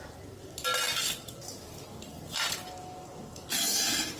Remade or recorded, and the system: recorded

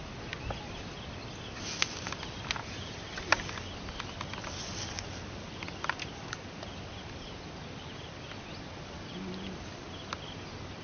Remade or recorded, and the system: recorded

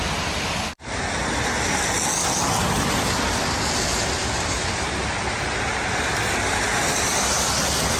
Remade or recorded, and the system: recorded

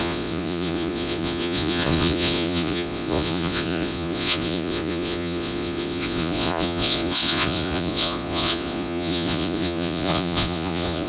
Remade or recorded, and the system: remade, vocoder, Vocos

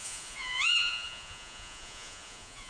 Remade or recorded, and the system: remade, vocoder, Vocos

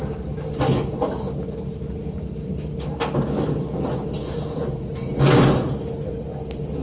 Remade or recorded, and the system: recorded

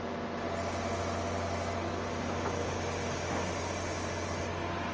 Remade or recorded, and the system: recorded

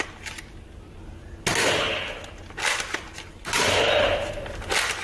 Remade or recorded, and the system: recorded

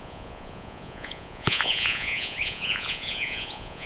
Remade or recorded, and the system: remade, vocoder, Vocos